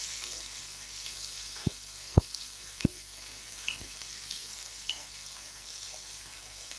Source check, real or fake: fake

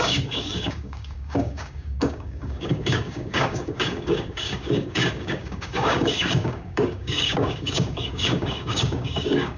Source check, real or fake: fake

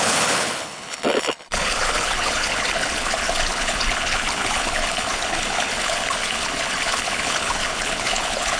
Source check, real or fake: fake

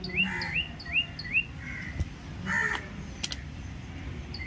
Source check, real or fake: real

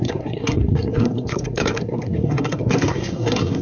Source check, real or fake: fake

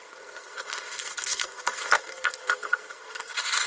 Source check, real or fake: fake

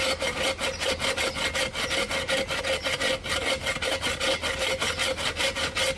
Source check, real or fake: real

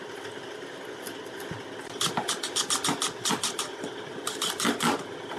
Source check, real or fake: real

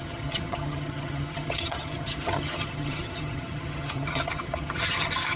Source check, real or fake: fake